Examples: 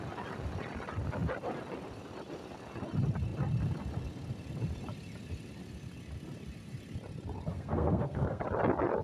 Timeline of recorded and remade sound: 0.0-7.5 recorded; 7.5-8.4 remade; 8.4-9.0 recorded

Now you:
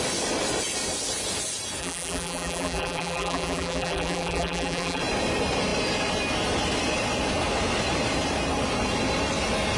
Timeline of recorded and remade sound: 0.0-1.8 recorded; 1.8-5.0 remade; 5.0-9.8 recorded

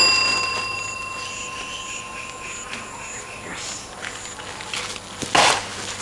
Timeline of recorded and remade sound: 0.0-6.0 recorded